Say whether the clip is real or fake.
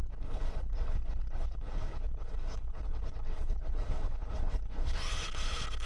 fake